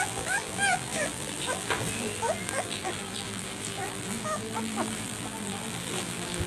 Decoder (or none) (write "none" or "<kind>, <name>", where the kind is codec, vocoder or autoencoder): vocoder, BigVGAN v2